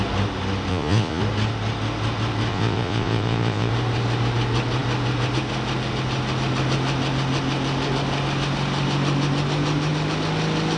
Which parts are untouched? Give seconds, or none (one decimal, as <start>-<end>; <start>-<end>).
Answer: 0.0-0.7; 1.2-2.5; 3.7-10.8